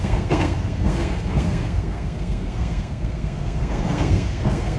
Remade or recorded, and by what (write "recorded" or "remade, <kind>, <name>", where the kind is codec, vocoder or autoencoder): remade, codec, SNAC